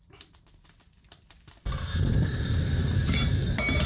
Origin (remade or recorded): remade